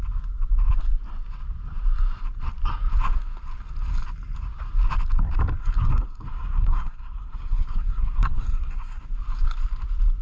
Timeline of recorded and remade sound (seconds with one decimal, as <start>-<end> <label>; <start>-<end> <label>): 0.0-5.6 recorded; 5.6-9.0 remade; 9.0-10.2 recorded